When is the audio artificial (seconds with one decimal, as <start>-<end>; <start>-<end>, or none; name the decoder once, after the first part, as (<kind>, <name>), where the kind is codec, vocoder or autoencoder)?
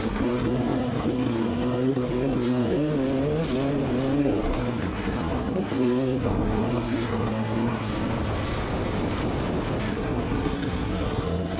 0.0-2.9 (codec, SNAC); 4.2-7.9; 9.8-11.6